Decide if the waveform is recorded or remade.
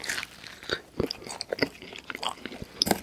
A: remade